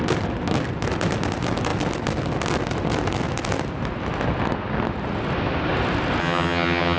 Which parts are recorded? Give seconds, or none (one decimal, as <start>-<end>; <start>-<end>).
0.0-6.2